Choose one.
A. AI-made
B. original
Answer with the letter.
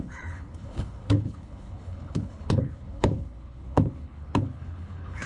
A